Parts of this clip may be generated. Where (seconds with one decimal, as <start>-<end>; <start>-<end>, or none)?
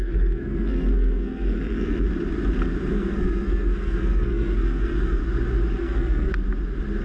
0.0-2.1; 2.9-5.2; 5.8-6.3